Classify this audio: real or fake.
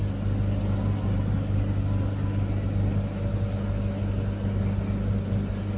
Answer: real